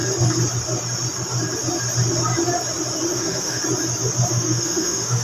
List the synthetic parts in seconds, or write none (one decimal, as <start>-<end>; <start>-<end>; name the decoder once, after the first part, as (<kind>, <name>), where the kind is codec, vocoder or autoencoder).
3.1-3.6 (autoencoder, DAC-VAE); 4.3-5.2